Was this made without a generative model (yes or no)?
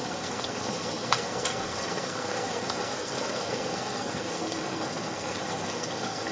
no